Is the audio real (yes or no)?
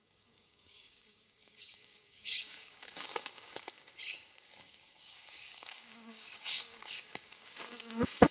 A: no